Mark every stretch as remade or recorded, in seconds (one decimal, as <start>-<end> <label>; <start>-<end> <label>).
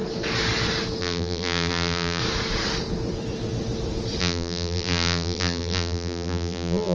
0.0-1.0 recorded; 1.0-2.2 remade; 2.2-4.2 recorded; 4.2-6.9 remade